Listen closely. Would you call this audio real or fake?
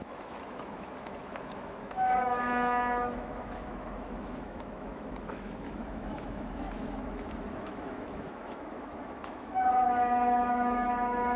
fake